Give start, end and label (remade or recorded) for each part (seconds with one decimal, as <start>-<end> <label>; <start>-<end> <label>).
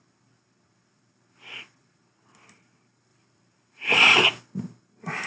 0.0-3.1 recorded; 3.1-4.1 remade; 4.1-5.3 recorded